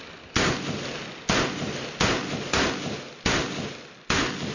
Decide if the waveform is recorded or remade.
recorded